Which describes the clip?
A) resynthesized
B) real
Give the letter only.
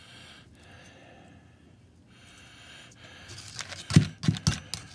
B